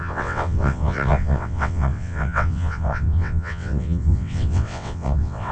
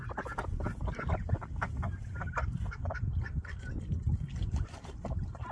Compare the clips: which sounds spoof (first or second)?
first